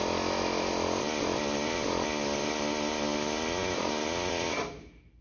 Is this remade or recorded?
recorded